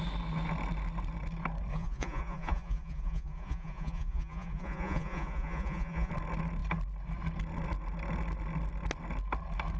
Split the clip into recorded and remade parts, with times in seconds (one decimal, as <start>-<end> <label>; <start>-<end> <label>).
0.0-1.7 recorded; 1.7-6.1 remade; 6.1-9.8 recorded